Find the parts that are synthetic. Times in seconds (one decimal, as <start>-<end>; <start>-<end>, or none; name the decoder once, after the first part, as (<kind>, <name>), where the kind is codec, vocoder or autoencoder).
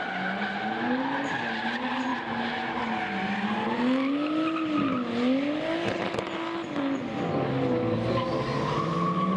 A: none